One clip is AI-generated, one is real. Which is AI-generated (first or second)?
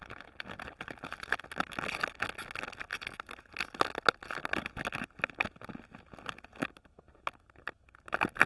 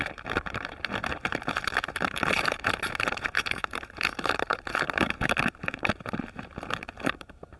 second